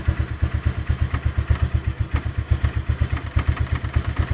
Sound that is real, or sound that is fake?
real